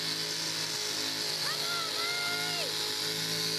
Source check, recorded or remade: recorded